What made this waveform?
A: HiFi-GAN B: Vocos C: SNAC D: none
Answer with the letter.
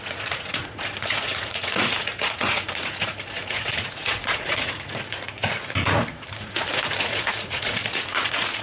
B